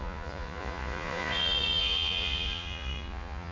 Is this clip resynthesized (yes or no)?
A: yes